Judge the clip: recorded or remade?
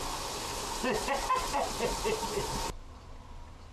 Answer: recorded